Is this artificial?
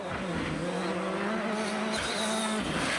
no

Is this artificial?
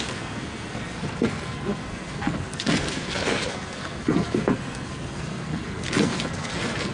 yes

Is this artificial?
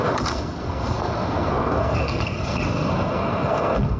yes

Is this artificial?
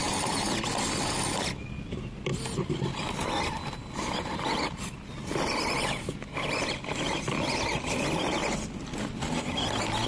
no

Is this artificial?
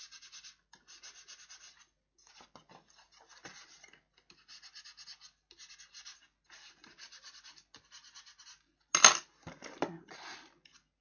no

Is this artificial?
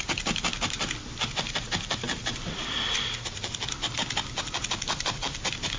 no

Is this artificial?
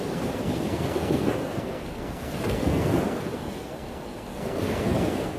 yes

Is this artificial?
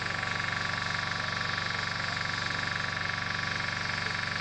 no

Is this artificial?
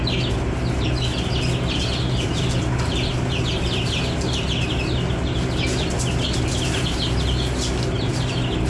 no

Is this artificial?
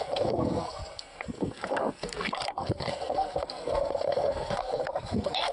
yes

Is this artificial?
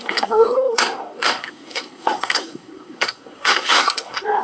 yes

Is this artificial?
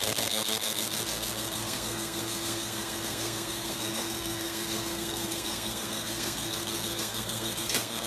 yes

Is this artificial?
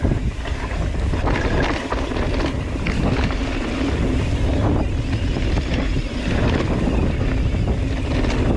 no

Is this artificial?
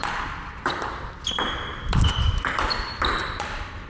no